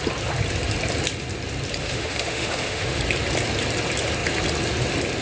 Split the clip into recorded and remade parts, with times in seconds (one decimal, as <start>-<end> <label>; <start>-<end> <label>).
0.0-1.8 recorded; 1.8-3.0 remade; 3.0-5.2 recorded